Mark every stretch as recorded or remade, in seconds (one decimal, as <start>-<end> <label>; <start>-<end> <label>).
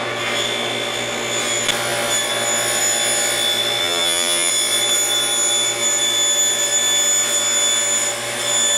0.0-3.8 recorded; 3.8-4.5 remade; 4.5-8.8 recorded